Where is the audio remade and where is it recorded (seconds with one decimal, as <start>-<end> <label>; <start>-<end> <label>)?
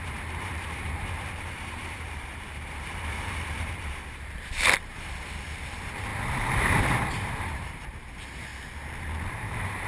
0.0-8.5 remade; 8.5-9.3 recorded; 9.3-9.9 remade